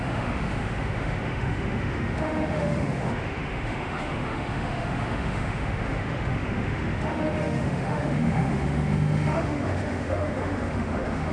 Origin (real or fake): fake